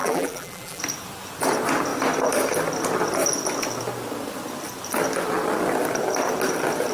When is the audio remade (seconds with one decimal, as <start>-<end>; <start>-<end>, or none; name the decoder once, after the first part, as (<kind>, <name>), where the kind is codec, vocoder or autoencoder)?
0.0-0.8 (vocoder, BigVGAN v2)